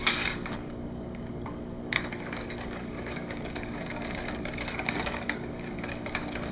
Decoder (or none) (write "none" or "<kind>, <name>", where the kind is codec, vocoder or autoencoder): codec, DAC